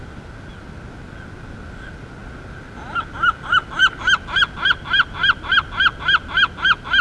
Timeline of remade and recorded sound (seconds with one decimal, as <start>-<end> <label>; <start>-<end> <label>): 0.0-7.0 recorded